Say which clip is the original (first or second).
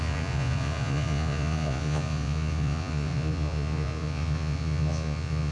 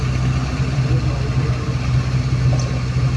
second